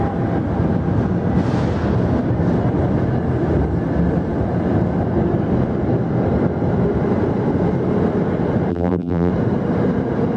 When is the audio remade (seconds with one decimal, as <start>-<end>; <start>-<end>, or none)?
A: 8.7-9.3